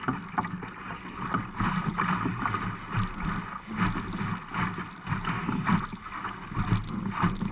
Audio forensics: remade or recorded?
recorded